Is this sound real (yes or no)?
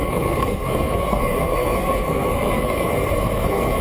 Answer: no